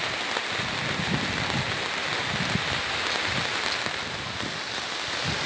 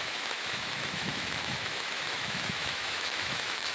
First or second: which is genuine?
first